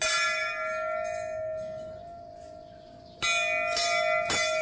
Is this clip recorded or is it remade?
recorded